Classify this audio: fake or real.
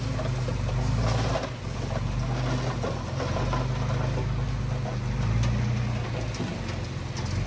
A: real